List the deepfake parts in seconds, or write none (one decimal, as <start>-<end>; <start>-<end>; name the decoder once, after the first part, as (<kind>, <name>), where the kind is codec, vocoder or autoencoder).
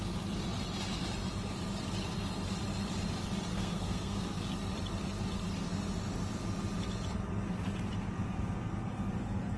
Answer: 3.5-4.4 (codec, SNAC)